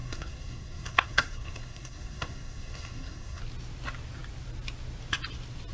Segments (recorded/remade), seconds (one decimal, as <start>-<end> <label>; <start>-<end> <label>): 0.0-3.4 remade; 3.4-5.7 recorded